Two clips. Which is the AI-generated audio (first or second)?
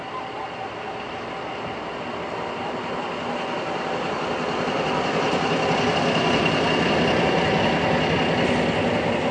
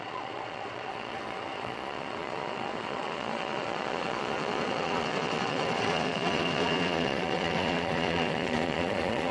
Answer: second